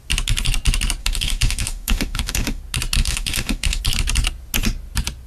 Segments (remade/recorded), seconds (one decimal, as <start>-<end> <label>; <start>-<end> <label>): 0.0-1.0 recorded; 1.0-2.6 remade; 2.6-3.0 recorded; 3.0-3.8 remade; 3.8-5.3 recorded